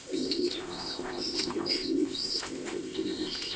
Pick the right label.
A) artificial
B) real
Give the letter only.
A